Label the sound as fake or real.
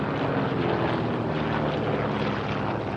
real